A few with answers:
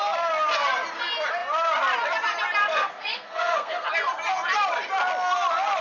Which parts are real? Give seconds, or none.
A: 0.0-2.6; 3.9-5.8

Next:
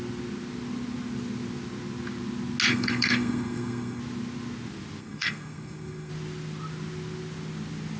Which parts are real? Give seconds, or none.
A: 0.0-2.7; 4.0-5.0; 6.1-8.0

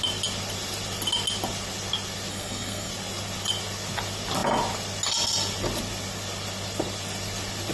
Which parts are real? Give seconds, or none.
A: 0.0-2.3; 2.9-7.7

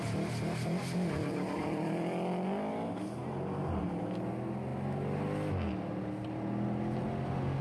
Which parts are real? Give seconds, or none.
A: 0.0-7.6

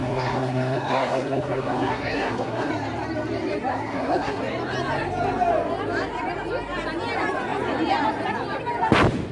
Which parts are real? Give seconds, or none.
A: 2.7-3.7; 4.4-9.3

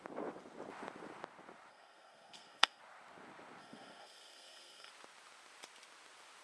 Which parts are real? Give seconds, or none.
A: 0.0-1.7; 2.8-3.6; 4.9-6.4